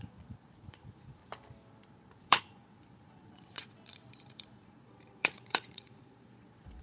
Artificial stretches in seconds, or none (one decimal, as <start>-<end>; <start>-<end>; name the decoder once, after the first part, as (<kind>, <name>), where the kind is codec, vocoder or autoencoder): 0.0-1.2 (vocoder, Vocos); 2.2-6.8